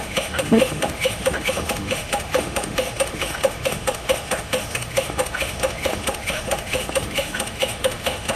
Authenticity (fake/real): fake